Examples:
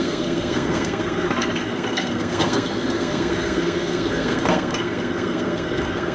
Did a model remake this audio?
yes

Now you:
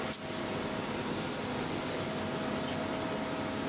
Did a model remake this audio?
no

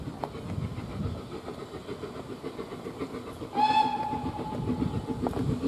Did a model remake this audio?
no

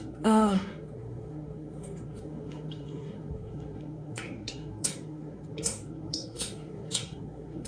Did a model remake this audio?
yes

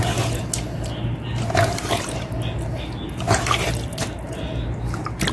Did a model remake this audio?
no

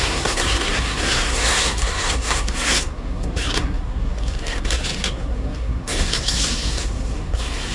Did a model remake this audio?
yes